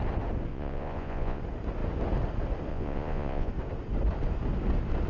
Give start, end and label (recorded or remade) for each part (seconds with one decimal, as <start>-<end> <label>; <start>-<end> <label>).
0.0-0.5 recorded; 0.5-1.4 remade; 1.4-2.7 recorded; 2.7-3.5 remade; 3.5-5.1 recorded